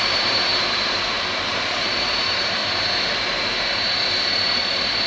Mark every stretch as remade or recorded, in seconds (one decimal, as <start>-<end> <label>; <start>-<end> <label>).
0.0-2.6 remade; 2.6-5.1 recorded